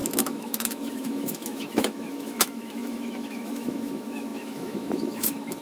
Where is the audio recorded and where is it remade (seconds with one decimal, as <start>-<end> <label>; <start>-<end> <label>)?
0.0-5.6 remade